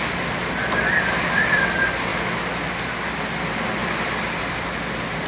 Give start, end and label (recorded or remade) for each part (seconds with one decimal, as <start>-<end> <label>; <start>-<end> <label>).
0.0-5.3 recorded

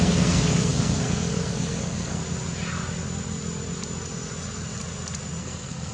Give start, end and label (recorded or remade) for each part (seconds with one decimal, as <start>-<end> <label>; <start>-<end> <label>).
0.0-2.2 remade; 2.2-5.4 recorded; 5.4-5.9 remade

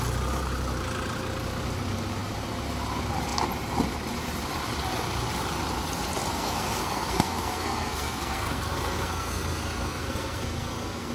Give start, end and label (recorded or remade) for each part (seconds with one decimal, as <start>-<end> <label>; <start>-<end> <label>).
0.0-6.3 recorded; 6.3-11.1 remade

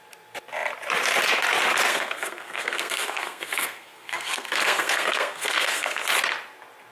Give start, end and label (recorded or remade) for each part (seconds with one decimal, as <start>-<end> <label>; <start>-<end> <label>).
0.0-1.9 recorded; 1.9-6.0 remade; 6.0-6.9 recorded

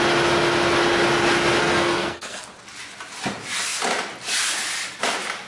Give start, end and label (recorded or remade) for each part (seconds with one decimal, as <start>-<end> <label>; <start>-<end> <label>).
0.0-1.6 recorded; 1.6-2.5 remade; 2.5-5.5 recorded

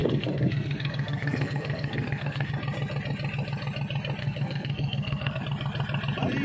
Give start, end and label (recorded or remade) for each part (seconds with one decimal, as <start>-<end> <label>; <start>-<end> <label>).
0.0-2.5 remade; 2.5-4.2 recorded; 4.2-5.4 remade; 5.4-6.4 recorded

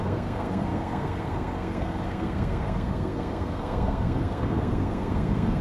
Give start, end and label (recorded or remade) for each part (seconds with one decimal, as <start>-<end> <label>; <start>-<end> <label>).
0.0-5.6 remade

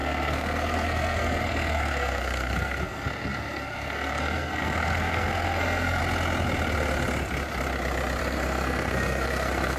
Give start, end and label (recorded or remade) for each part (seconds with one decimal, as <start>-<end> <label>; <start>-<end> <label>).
0.0-6.0 remade; 6.0-8.2 recorded; 8.2-9.8 remade